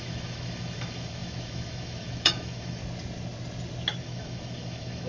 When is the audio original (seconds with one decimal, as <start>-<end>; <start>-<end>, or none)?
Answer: 2.8-4.0